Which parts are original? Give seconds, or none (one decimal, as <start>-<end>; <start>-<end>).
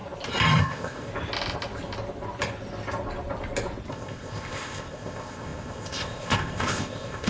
0.0-0.6; 1.1-3.9